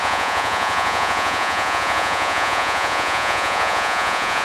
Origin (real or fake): fake